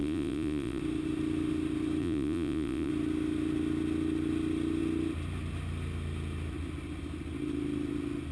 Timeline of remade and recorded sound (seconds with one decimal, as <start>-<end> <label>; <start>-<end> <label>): 0.0-0.8 remade; 0.8-2.0 recorded; 2.0-2.9 remade; 2.9-8.3 recorded